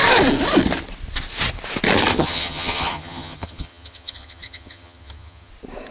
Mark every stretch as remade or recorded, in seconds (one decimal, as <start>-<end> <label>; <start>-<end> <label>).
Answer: 0.0-2.1 recorded; 2.1-5.5 remade; 5.5-5.9 recorded